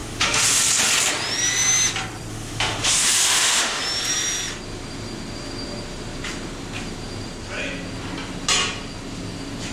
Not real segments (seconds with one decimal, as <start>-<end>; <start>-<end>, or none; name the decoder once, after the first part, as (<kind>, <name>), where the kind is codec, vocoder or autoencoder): 0.0-0.6 (autoencoder, DAC-VAE); 2.3-3.8